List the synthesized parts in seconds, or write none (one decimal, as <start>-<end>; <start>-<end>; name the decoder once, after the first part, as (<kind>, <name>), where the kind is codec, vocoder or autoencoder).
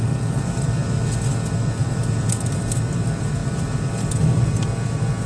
0.0-0.8 (vocoder, BigVGAN v2); 1.8-3.4